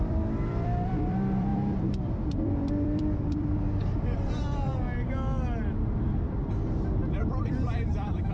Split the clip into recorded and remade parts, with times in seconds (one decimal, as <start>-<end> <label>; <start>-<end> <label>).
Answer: 0.0-4.7 remade; 4.7-7.4 recorded; 7.4-8.3 remade